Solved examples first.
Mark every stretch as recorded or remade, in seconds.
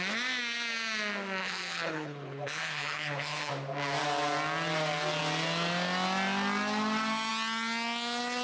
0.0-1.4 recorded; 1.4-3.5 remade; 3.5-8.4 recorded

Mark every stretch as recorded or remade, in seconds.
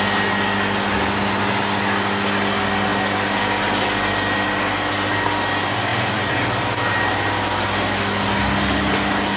0.0-5.9 recorded; 5.9-6.9 remade; 6.9-9.4 recorded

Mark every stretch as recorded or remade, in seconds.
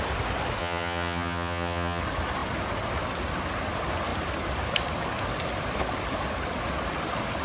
0.0-0.6 recorded; 0.6-2.0 remade; 2.0-7.4 recorded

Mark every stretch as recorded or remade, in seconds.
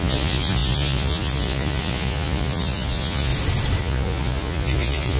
0.0-3.3 remade; 3.3-3.8 recorded; 3.8-5.2 remade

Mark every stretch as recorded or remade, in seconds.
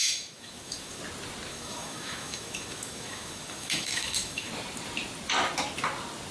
0.0-1.0 remade; 1.0-1.5 recorded; 1.5-4.5 remade; 4.5-6.3 recorded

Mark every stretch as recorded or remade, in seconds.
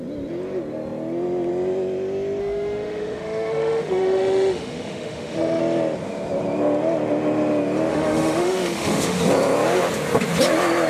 0.0-2.4 recorded; 2.4-5.6 remade; 5.6-7.9 recorded; 7.9-9.2 remade; 9.2-10.9 recorded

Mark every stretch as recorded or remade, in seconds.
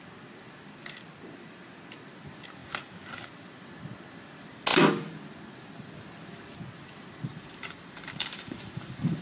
0.0-7.3 recorded; 7.3-9.2 remade